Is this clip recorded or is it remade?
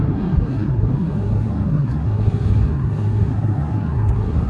remade